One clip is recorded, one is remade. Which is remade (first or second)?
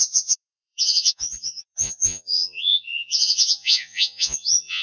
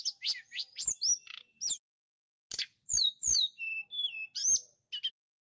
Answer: first